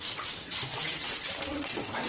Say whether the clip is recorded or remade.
remade